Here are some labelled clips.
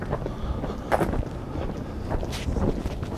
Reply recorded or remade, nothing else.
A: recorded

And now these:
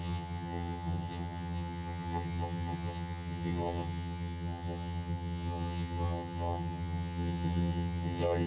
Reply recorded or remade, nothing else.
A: remade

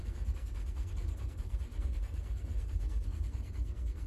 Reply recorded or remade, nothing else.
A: remade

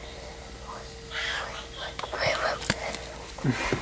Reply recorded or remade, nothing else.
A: recorded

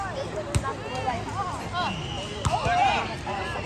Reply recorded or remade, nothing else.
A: recorded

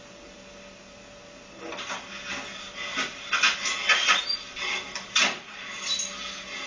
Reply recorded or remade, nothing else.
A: recorded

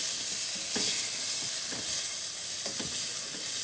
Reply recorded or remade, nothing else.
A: recorded